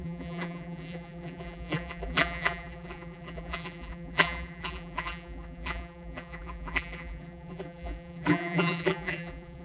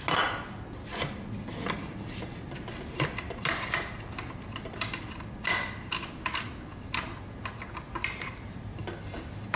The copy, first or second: first